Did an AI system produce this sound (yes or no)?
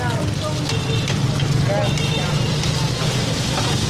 no